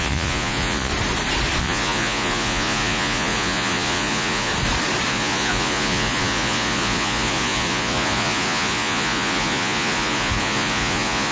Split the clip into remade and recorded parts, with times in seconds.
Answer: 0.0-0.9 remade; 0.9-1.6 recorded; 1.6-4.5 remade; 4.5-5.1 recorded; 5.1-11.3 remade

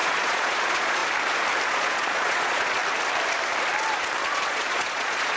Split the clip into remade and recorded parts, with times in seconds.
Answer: 0.0-1.0 remade; 1.0-1.7 recorded; 1.7-2.8 remade; 2.8-4.3 recorded; 4.3-5.4 remade

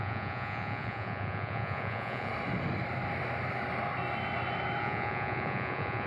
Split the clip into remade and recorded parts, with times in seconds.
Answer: 0.0-2.3 remade; 2.3-4.8 recorded; 4.8-6.1 remade

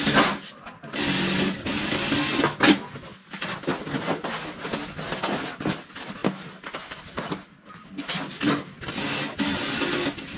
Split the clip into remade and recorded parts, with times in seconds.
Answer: 0.0-10.4 recorded

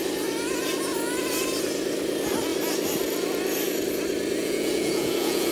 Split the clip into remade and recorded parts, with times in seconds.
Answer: 0.0-4.4 recorded; 4.4-5.5 remade

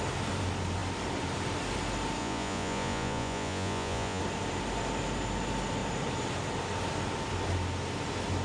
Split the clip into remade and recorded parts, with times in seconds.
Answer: 0.0-2.2 recorded; 2.2-4.2 remade; 4.2-8.4 recorded